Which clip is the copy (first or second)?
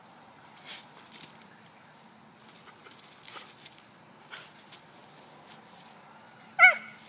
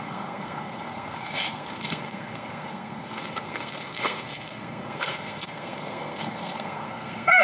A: second